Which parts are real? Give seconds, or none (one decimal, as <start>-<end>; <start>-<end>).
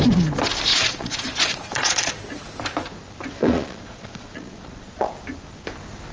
0.0-0.7; 2.1-3.4; 5.1-6.1